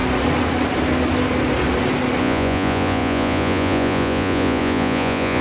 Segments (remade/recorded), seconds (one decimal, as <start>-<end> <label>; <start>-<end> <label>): 0.0-2.2 recorded; 2.2-5.4 remade